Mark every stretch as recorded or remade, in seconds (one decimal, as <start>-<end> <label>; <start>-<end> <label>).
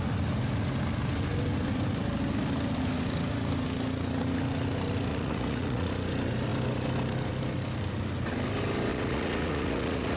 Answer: 0.0-5.1 recorded; 5.1-5.9 remade; 5.9-8.9 recorded; 8.9-10.2 remade